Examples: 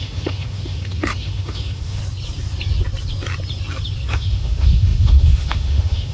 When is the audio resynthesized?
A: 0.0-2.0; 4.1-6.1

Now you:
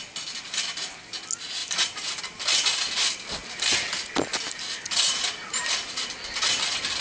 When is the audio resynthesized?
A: none

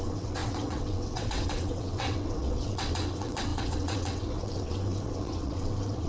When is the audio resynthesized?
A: 0.0-6.1

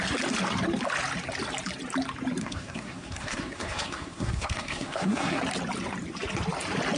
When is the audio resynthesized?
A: 2.4-5.4

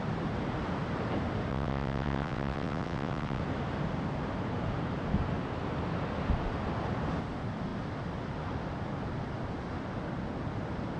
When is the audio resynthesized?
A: 1.5-3.4